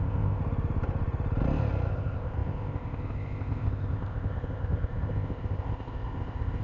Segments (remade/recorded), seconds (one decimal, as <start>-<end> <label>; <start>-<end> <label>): 0.0-0.4 remade; 0.4-1.9 recorded; 1.9-6.6 remade